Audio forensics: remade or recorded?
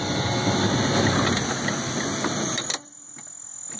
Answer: recorded